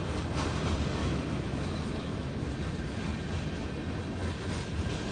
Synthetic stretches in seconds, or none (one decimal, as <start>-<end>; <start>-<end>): 1.0-2.5